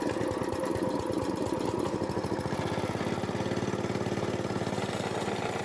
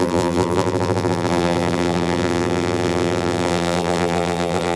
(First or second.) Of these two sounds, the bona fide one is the first